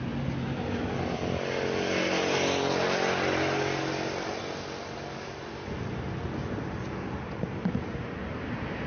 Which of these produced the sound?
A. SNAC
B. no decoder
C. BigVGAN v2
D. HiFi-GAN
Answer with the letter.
B